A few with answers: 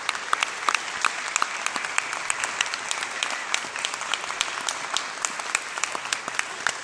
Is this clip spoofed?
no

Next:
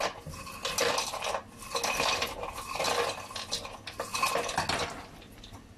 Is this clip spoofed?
no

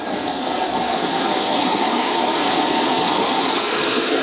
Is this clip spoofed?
yes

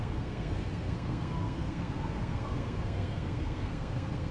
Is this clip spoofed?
yes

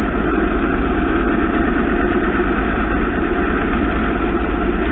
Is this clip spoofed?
no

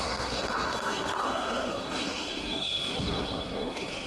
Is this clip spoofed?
yes